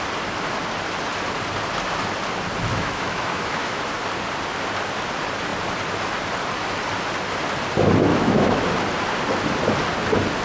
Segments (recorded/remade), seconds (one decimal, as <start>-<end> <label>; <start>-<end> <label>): 0.0-2.7 recorded; 2.7-3.8 remade; 3.8-8.1 recorded; 8.1-8.6 remade; 8.6-10.4 recorded